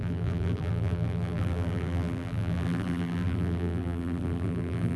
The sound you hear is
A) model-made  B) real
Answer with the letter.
A